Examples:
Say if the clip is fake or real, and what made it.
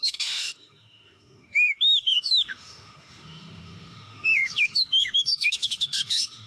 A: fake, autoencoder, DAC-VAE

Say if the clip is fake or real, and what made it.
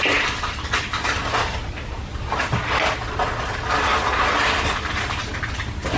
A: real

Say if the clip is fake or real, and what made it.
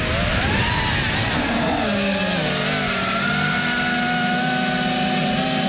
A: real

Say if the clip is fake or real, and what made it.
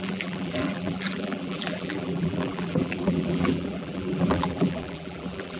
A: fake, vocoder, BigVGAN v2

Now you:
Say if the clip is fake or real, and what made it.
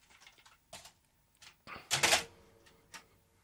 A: real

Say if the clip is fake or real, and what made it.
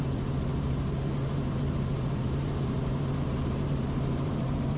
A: fake, vocoder, BigVGAN v2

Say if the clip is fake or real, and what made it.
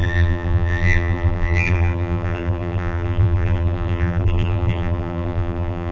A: fake, vocoder, BigVGAN v2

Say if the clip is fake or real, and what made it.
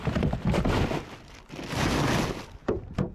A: real